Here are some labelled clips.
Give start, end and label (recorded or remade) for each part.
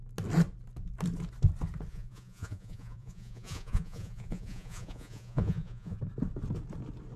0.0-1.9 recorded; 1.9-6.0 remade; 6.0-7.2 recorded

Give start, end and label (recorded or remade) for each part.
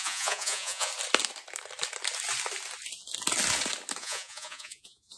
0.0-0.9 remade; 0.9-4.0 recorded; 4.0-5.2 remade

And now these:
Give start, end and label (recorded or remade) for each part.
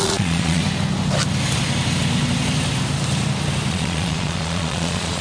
0.0-0.6 remade; 0.6-3.7 recorded; 3.7-5.2 remade